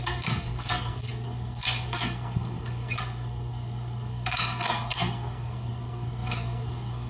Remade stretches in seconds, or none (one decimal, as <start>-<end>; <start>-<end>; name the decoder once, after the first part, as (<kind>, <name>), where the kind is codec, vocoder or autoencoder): 0.0-7.1 (codec, SNAC)